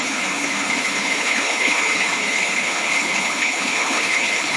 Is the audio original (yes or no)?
no